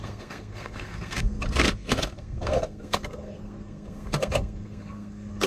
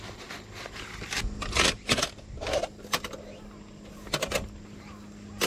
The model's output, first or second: first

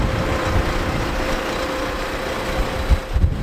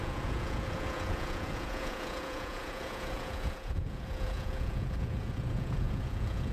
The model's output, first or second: second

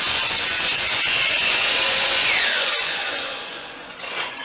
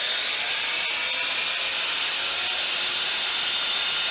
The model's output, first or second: first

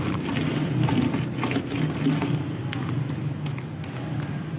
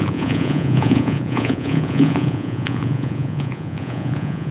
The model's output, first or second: second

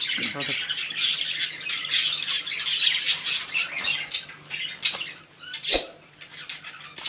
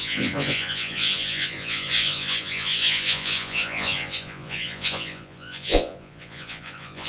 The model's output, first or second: second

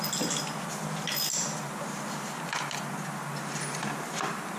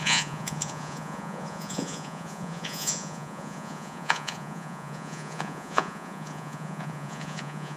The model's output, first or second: second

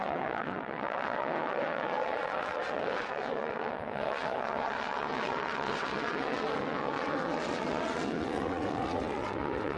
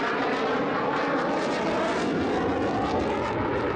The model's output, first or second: first